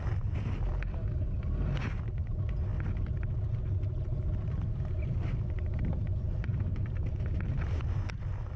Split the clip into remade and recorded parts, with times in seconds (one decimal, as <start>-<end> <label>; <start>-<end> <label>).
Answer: 0.0-8.6 recorded